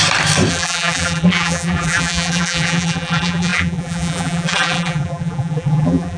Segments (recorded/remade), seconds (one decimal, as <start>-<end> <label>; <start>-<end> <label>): 0.0-0.5 recorded; 0.5-6.2 remade